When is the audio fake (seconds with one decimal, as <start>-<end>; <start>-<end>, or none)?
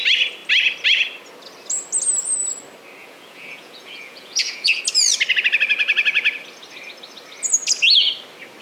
3.0-4.8